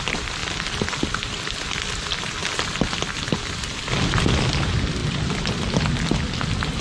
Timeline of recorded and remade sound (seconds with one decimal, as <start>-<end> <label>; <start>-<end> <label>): 0.0-6.8 recorded